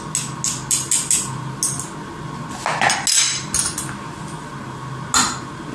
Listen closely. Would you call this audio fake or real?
real